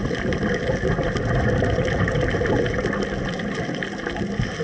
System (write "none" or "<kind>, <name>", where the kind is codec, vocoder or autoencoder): none